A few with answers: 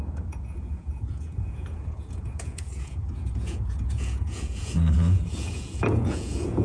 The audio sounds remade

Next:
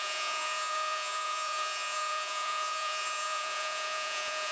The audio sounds remade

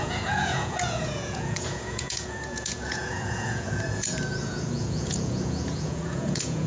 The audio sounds remade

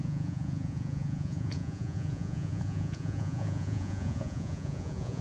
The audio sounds remade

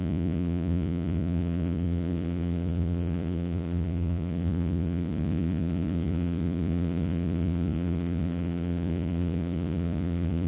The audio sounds remade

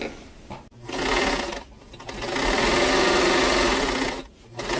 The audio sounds recorded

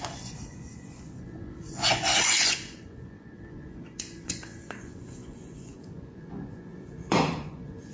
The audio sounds remade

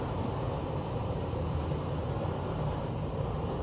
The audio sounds recorded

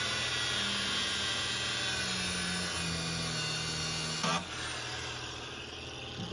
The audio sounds recorded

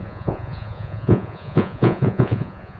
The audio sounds remade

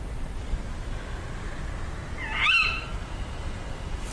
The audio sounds recorded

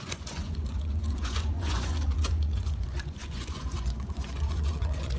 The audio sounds remade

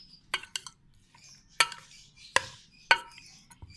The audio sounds recorded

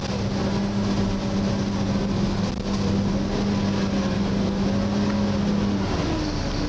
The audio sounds recorded